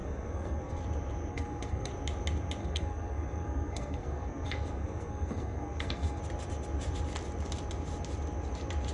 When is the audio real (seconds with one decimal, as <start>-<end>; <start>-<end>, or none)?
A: 0.8-1.3; 1.9-2.6; 6.2-8.9